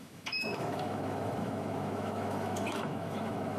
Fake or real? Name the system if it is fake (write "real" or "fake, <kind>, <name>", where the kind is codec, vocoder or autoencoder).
fake, autoencoder, DAC-VAE